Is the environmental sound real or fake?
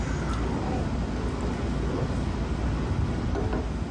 real